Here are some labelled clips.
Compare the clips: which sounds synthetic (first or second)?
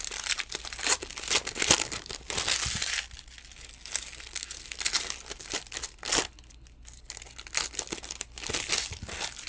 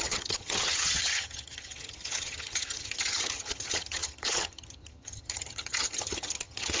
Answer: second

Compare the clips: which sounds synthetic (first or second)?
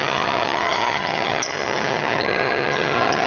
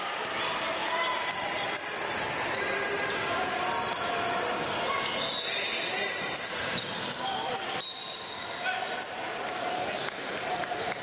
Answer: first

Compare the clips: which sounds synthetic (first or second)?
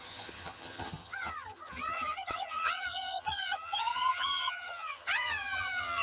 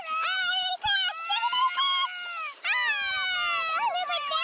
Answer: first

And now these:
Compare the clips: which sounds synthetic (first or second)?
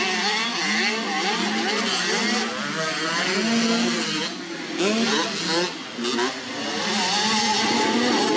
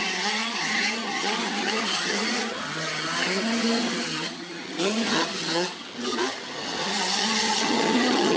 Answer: second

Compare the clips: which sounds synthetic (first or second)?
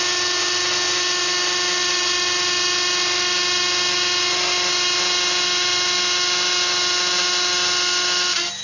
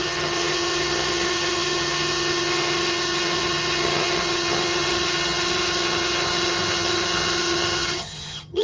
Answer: second